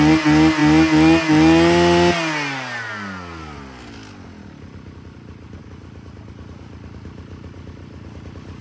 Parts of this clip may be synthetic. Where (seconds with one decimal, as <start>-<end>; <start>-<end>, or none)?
none